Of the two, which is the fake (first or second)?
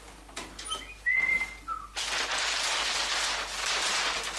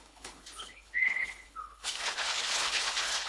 second